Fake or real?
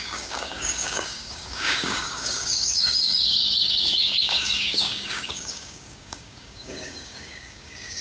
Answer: fake